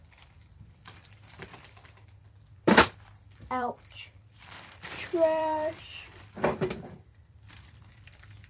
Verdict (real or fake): fake